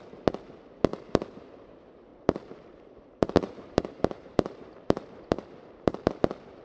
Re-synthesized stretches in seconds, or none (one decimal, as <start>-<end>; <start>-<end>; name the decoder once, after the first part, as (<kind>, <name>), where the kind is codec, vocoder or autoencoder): 0.9-1.7 (vocoder, BigVGAN v2); 2.1-6.1